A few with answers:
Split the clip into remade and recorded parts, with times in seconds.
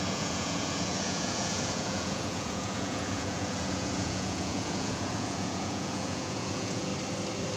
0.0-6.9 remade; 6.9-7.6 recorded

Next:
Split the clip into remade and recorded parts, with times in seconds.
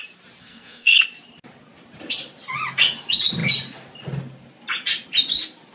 0.0-0.4 recorded; 0.4-1.0 remade; 1.0-5.7 recorded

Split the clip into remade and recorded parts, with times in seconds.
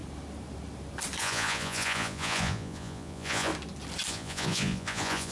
0.0-1.2 recorded; 1.2-3.5 remade; 3.5-4.1 recorded; 4.1-5.3 remade